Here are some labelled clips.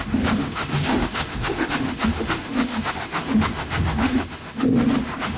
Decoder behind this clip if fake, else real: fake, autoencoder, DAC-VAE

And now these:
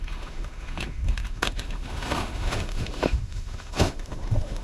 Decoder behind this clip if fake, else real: fake, autoencoder, DAC-VAE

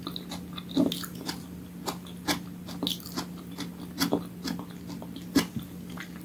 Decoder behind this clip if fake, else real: real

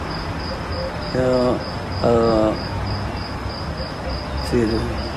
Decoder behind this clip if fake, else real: real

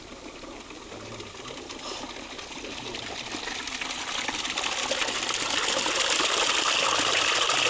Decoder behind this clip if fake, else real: real